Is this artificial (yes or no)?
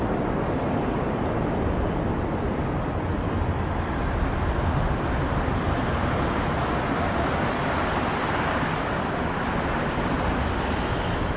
no